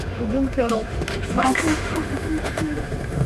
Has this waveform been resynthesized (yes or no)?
yes